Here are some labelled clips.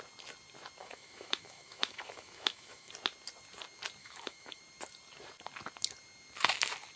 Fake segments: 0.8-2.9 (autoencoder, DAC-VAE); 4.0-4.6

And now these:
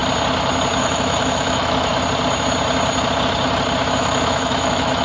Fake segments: 0.8-1.9 (autoencoder, DAC-VAE); 3.9-5.0